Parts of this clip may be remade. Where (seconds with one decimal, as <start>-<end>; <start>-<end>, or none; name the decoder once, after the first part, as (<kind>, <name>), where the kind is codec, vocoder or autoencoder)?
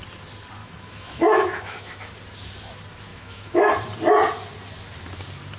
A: 0.6-2.1 (autoencoder, DAC-VAE); 3.1-3.7